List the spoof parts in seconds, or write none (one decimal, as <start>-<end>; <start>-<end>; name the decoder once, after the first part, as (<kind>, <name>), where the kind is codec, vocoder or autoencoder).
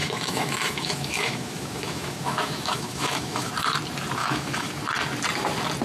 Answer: 0.0-3.5 (autoencoder, DAC-VAE); 4.2-4.7